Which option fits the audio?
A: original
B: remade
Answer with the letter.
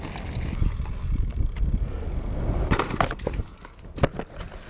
A